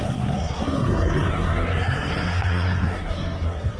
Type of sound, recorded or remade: remade